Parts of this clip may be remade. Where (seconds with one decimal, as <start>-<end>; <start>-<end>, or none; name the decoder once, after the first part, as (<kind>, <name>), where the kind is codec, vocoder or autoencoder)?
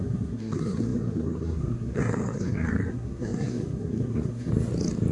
0.0-4.5 (codec, SNAC)